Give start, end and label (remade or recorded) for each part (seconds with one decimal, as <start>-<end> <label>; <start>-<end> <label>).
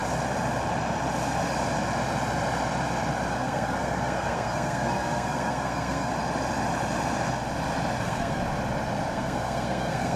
0.0-3.3 recorded; 3.3-6.1 remade; 6.1-8.0 recorded; 8.0-8.4 remade; 8.4-9.1 recorded; 9.1-10.2 remade